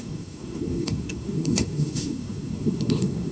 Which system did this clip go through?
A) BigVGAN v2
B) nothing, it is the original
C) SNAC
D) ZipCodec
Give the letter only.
C